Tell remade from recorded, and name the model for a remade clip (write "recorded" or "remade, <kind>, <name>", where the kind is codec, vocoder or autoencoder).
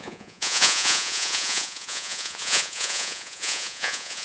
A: remade, vocoder, Vocos